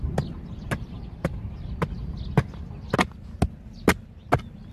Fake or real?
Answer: real